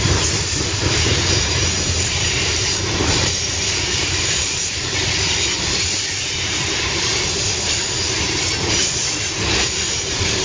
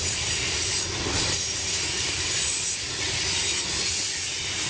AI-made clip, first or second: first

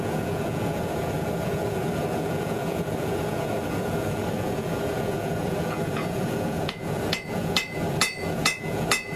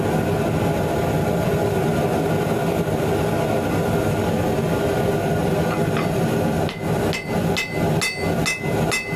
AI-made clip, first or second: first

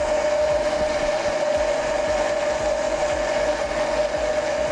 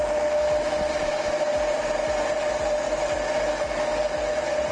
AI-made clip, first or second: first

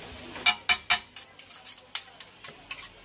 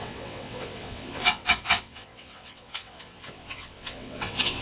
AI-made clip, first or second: second